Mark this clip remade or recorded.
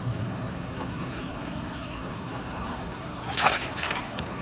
remade